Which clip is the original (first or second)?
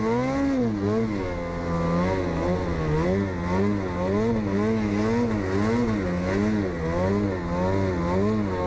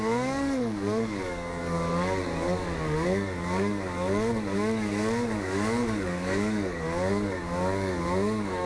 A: first